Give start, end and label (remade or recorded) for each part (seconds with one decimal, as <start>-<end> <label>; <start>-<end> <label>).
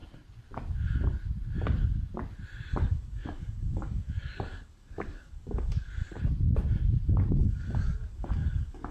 0.0-2.7 recorded; 2.7-6.2 remade; 6.2-7.4 recorded; 7.4-8.9 remade